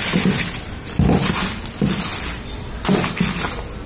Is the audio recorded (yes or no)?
yes